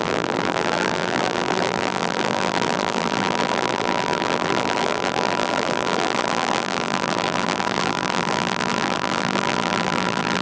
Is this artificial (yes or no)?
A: yes